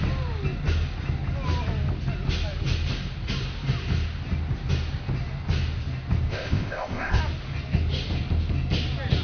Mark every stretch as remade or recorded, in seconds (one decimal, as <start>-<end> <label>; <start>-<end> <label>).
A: 0.0-6.3 recorded; 6.3-7.2 remade; 7.2-9.2 recorded